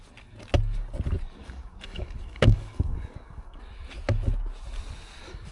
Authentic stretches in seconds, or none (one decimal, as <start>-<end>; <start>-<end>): 0.0-1.4; 3.6-5.5